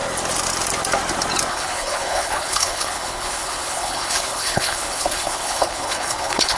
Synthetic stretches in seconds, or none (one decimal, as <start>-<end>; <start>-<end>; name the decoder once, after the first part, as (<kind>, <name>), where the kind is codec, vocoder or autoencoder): 1.5-6.6 (codec, HILCodec)